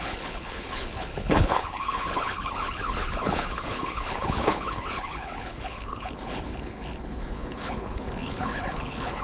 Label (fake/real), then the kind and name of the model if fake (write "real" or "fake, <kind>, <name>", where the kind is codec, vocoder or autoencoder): fake, codec, HILCodec